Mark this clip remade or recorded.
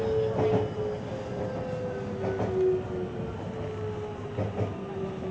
recorded